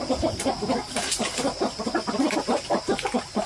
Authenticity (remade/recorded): remade